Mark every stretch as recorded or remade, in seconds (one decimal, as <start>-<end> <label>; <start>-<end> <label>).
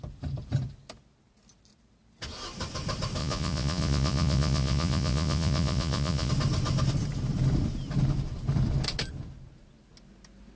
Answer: 0.0-3.2 recorded; 3.2-6.3 remade; 6.3-10.6 recorded